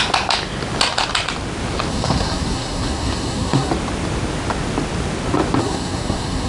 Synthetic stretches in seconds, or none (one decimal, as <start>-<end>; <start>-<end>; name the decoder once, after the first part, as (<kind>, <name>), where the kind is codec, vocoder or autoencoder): 1.9-3.7 (codec, SNAC); 5.6-6.5